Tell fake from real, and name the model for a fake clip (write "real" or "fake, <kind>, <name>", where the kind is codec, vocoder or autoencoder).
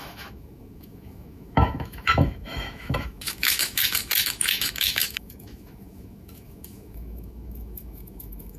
fake, autoencoder, DAC-VAE